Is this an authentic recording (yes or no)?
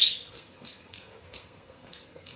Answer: no